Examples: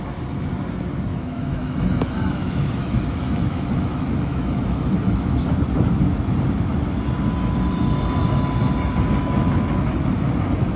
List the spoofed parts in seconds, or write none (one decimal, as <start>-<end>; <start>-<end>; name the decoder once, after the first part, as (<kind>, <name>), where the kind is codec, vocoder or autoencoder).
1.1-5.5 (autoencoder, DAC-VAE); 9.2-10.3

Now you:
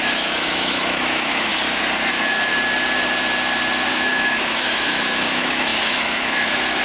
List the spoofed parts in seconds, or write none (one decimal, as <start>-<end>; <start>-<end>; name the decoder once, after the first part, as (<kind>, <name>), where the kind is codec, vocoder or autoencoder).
0.0-1.5 (autoencoder, DAC-VAE); 2.1-2.5; 3.9-6.8

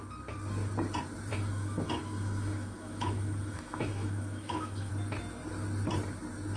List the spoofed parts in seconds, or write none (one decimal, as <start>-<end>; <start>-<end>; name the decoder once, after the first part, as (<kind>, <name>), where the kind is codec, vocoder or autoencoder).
1.3-4.9 (autoencoder, DAC-VAE)